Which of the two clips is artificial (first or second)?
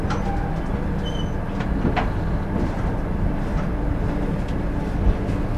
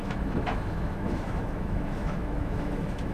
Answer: second